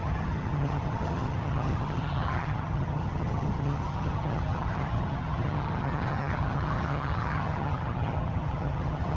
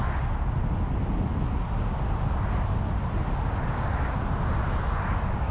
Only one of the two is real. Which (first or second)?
second